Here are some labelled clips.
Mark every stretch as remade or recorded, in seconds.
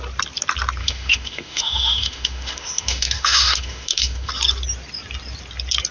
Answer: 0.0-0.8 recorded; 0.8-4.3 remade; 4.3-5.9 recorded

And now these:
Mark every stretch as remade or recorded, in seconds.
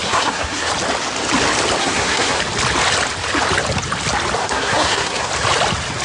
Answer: 0.0-0.7 remade; 0.7-1.8 recorded; 1.8-2.4 remade; 2.4-4.4 recorded; 4.4-5.3 remade; 5.3-6.0 recorded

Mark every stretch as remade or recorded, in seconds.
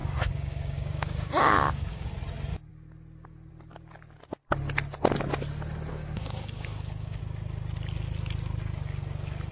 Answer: 0.0-2.1 remade; 2.1-5.9 recorded; 5.9-7.2 remade; 7.2-9.5 recorded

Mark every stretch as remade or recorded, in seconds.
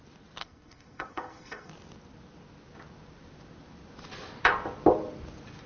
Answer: 0.0-0.4 recorded; 0.4-1.7 remade; 1.7-5.7 recorded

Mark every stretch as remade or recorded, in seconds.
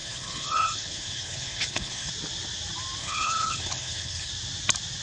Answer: 0.0-2.1 remade; 2.1-3.0 recorded; 3.0-4.3 remade; 4.3-5.0 recorded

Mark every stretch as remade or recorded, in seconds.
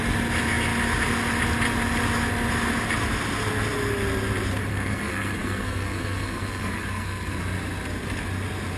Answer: 0.0-4.7 recorded; 4.7-7.4 remade; 7.4-8.8 recorded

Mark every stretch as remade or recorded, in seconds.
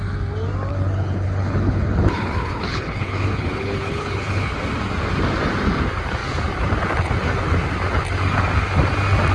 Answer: 0.0-0.7 recorded; 0.7-4.6 remade; 4.6-9.3 recorded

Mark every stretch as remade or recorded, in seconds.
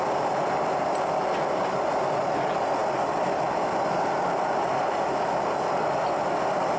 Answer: 0.0-6.8 recorded